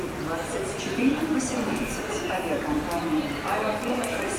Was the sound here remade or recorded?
remade